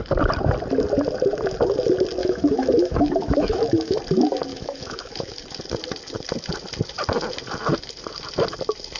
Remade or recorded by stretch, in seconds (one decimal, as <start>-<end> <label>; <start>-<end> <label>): 0.0-2.2 recorded; 2.2-4.0 remade; 4.0-4.5 recorded; 4.5-5.4 remade; 5.4-9.0 recorded